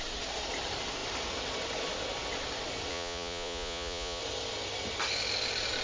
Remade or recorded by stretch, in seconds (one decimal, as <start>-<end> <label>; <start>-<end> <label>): 0.0-2.9 recorded; 2.9-4.2 remade; 4.2-5.8 recorded